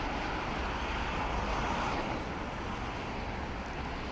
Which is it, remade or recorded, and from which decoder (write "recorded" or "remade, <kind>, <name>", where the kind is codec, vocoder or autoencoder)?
recorded